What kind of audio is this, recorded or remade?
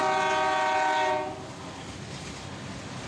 recorded